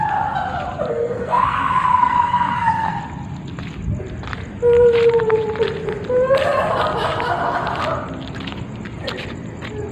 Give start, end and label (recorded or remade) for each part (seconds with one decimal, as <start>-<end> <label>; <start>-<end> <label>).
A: 0.0-0.9 recorded; 0.9-3.0 remade; 3.0-9.9 recorded